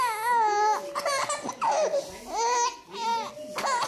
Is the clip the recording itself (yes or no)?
yes